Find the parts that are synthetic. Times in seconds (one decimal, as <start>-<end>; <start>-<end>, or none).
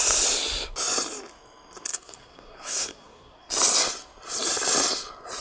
1.9-3.5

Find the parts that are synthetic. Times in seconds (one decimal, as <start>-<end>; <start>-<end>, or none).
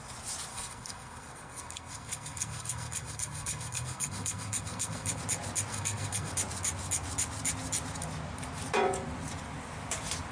0.5-5.2; 5.7-6.3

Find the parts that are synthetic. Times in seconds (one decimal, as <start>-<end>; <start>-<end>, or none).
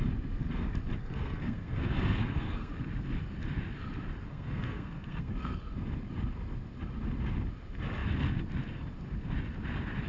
1.0-2.7; 4.3-5.6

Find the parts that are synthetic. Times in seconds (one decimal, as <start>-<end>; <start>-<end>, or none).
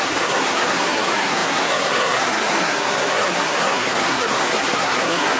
0.0-5.4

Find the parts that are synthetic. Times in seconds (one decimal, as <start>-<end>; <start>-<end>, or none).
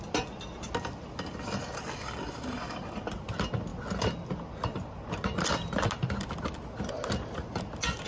none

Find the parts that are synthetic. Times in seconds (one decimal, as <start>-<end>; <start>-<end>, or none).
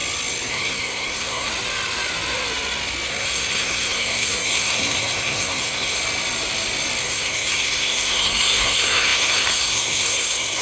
0.5-1.5; 3.1-6.0; 7.0-10.6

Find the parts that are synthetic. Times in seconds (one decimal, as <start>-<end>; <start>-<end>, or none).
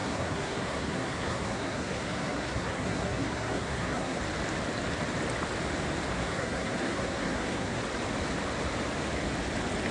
0.0-4.2; 6.1-7.8